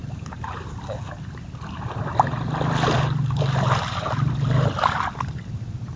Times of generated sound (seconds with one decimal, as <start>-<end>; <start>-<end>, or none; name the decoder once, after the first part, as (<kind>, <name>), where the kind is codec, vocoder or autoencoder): none

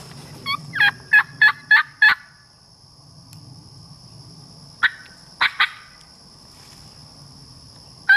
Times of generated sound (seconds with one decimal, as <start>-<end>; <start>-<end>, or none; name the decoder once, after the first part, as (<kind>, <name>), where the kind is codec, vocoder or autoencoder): none

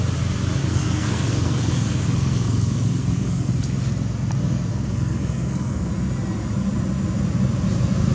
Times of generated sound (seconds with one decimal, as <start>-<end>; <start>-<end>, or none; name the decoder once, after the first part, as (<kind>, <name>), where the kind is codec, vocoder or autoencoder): 0.6-3.5 (codec, SNAC); 4.7-5.9

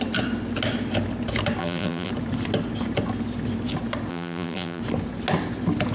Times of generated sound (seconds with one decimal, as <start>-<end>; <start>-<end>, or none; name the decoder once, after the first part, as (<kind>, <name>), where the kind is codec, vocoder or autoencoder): 1.6-2.1 (vocoder, BigVGAN v2); 4.1-4.8

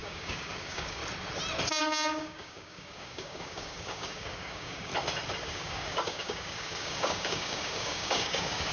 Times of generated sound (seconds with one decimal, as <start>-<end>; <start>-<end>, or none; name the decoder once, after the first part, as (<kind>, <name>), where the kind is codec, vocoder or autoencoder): 0.0-1.0 (codec, DAC); 1.8-4.9; 5.4-8.7

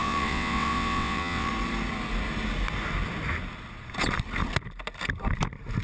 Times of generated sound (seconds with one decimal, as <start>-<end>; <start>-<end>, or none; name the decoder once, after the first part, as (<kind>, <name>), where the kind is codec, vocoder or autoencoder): 0.0-1.5 (vocoder, WaveNeXt)

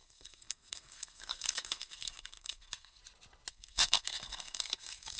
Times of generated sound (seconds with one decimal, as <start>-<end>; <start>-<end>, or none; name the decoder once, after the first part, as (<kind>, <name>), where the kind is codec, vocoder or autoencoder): 0.0-3.0 (codec, SNAC); 3.5-5.2

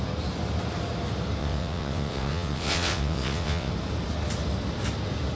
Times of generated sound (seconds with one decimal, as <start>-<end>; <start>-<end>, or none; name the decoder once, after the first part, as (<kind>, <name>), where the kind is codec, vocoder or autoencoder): 1.4-3.7 (vocoder, WaveNeXt)